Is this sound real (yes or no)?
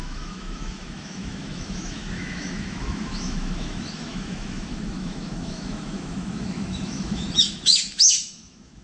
no